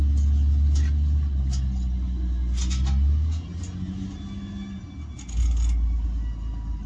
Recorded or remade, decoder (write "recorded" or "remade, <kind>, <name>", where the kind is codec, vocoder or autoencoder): recorded